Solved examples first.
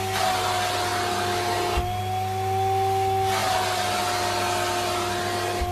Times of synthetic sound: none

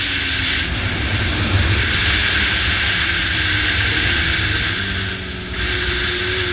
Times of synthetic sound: none

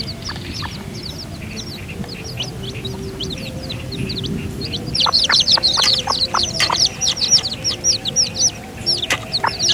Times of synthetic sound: 3.2-7.2

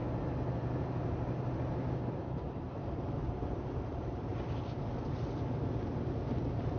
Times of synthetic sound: 2.3-4.3; 6.3-6.8

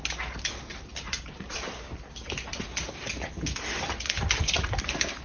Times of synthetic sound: 0.9-3.1

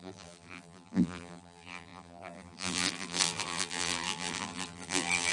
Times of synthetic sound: 0.0-5.3